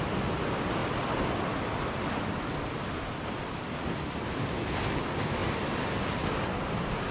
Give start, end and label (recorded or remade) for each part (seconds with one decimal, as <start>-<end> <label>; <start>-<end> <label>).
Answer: 0.0-7.1 recorded